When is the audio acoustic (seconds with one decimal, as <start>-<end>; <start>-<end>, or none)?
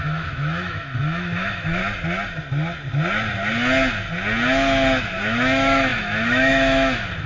1.8-5.0